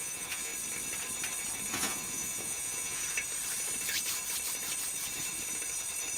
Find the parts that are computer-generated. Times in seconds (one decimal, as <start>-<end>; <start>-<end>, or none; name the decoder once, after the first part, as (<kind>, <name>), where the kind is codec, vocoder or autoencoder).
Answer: 0.0-0.5 (vocoder, Vocos); 1.7-3.0